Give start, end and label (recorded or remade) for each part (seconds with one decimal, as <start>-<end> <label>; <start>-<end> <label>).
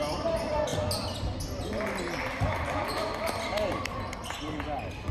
0.0-5.1 recorded